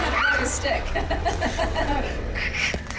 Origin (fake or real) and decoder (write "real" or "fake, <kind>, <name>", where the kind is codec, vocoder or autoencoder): fake, vocoder, WaveNeXt